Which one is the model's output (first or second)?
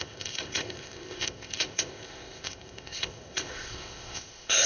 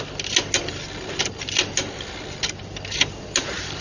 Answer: first